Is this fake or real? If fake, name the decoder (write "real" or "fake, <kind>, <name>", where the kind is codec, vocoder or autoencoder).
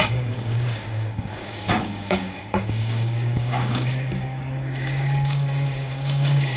fake, codec, DAC